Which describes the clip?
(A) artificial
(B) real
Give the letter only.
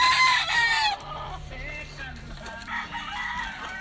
A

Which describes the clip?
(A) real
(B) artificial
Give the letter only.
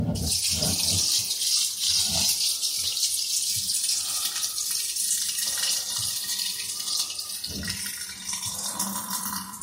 B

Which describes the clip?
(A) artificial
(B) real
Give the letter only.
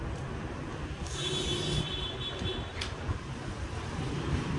A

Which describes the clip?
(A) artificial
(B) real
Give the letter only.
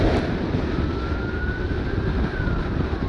B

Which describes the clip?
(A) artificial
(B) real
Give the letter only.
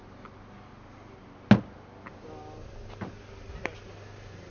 B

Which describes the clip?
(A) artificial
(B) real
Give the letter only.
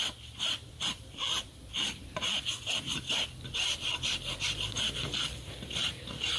A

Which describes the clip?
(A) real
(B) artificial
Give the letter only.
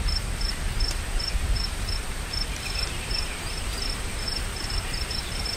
B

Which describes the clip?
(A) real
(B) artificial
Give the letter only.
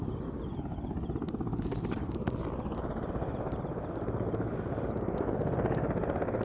A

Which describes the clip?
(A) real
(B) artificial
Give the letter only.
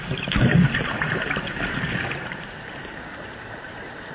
B